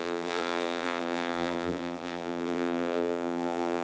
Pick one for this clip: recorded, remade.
remade